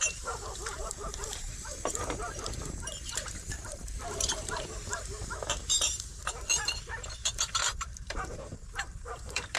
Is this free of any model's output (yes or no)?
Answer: no